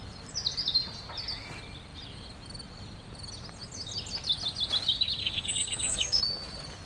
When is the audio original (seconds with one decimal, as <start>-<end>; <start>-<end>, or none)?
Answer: 0.0-5.2; 6.2-6.9